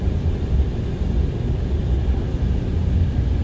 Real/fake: real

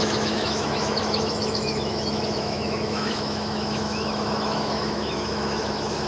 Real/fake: fake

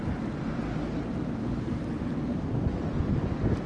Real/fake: real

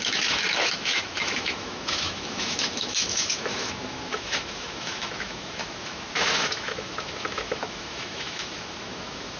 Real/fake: fake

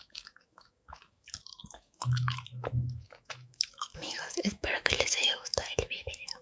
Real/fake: fake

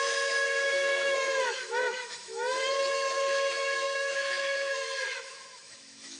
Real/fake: fake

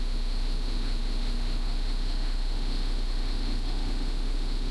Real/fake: fake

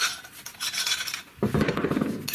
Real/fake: real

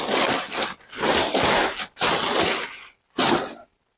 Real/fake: real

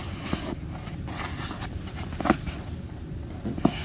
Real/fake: real